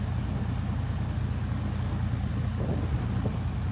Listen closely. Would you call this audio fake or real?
real